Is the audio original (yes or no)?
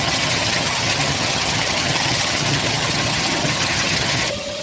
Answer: no